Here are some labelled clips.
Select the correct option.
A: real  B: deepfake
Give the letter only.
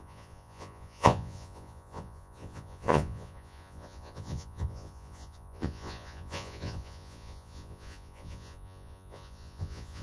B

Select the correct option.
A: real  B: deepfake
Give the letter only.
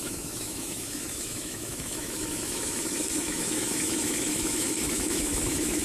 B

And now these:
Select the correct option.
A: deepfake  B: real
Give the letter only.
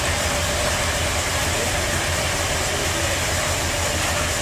B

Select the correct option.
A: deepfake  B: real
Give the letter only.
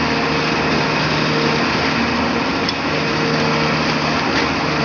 B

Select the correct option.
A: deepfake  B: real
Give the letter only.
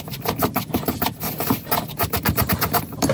B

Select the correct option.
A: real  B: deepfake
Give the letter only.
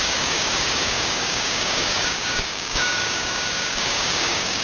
B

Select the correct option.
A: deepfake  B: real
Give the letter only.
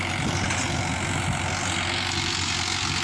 B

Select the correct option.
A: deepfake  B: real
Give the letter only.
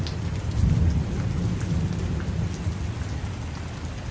B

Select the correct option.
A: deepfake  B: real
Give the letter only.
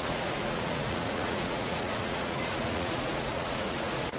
A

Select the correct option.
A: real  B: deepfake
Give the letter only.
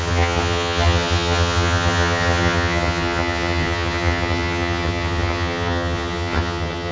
B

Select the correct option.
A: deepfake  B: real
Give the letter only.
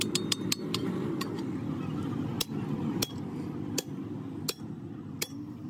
B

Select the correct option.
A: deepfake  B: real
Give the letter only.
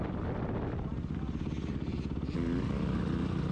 B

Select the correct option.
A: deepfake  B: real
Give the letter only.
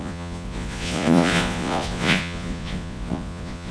A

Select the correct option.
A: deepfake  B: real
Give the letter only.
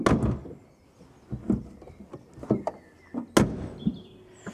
B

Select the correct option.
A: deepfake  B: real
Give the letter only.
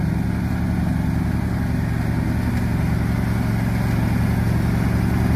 B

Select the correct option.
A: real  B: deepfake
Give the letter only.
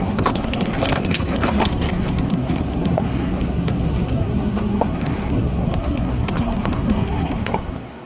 B